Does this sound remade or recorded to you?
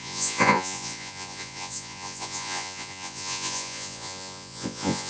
remade